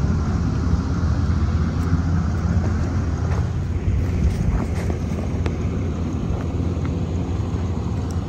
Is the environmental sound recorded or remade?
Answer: recorded